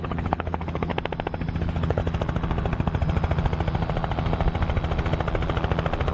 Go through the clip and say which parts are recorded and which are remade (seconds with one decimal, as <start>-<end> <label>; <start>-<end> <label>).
0.0-0.9 remade; 0.9-1.6 recorded; 1.6-2.0 remade; 2.0-6.1 recorded